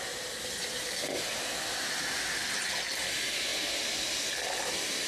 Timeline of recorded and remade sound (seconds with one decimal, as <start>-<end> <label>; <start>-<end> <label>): 0.0-5.1 recorded